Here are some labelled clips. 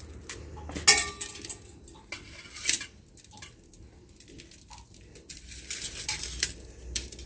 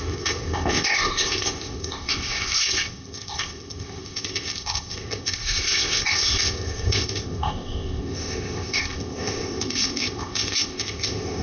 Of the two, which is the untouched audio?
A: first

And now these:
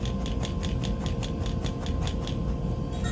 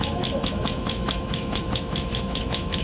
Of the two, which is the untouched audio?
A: first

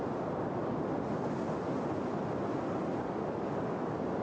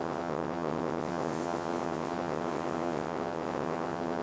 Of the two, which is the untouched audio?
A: first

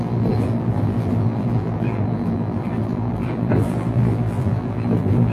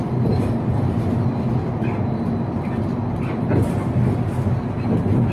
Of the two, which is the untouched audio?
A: second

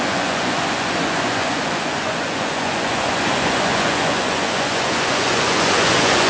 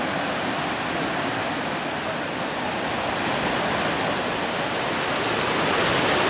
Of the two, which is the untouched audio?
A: second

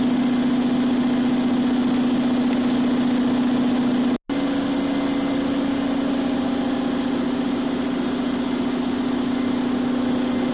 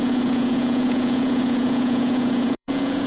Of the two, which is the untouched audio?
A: first